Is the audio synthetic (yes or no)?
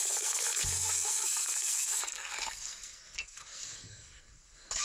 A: yes